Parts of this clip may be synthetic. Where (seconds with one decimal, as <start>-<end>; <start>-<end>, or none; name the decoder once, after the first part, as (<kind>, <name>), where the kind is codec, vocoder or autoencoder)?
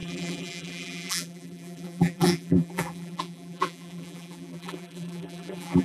0.0-5.8 (vocoder, BigVGAN v2)